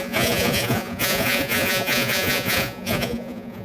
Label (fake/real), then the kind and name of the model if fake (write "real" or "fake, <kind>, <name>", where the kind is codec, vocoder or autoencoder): fake, vocoder, Vocos